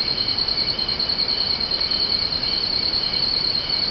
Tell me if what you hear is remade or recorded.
recorded